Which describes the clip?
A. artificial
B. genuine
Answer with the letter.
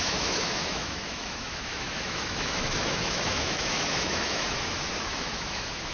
A